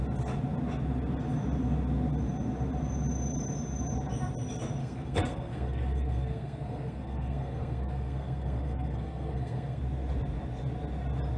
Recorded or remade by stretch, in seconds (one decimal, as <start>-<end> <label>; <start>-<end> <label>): 0.0-4.8 recorded; 4.8-9.8 remade; 9.8-11.4 recorded